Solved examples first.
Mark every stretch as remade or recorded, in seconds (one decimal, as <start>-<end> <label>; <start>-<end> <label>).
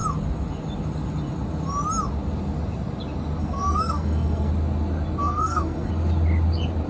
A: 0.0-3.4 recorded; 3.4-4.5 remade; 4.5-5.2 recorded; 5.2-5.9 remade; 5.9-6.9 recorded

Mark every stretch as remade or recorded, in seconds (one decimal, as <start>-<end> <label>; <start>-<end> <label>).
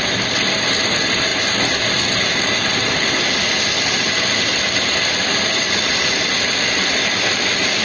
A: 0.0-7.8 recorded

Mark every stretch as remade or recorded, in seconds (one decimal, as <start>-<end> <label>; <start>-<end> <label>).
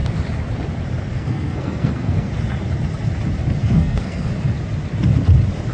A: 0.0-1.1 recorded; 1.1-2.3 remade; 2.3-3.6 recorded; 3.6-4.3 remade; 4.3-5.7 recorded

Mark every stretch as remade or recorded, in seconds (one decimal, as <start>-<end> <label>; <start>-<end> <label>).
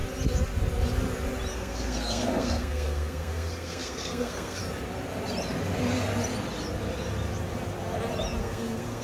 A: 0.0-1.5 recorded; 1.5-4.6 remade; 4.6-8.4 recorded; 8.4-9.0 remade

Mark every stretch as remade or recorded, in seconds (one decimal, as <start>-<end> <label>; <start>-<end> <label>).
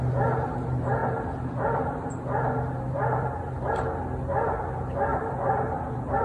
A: 0.0-1.0 recorded; 1.0-3.8 remade; 3.8-5.1 recorded; 5.1-6.2 remade